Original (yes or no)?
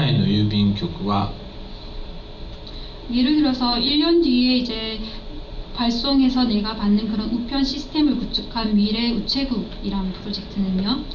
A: yes